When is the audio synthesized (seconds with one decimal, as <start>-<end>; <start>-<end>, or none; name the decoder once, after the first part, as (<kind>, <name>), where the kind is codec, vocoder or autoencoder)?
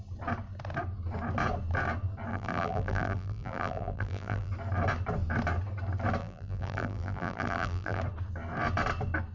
2.3-4.5 (vocoder, BigVGAN v2); 6.2-8.0